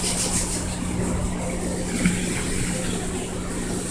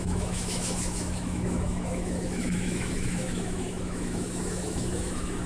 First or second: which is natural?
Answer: first